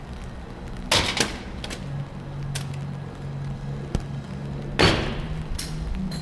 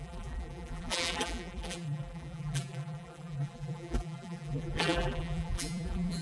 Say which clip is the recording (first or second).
first